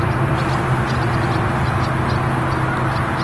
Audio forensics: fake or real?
real